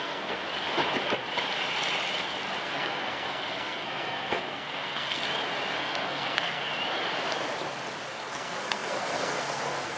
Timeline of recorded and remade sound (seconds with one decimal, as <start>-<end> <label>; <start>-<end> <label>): 0.0-0.4 remade; 0.4-2.6 recorded; 2.6-5.2 remade; 5.2-5.8 recorded; 5.8-6.7 remade; 6.7-8.1 recorded; 8.1-10.0 remade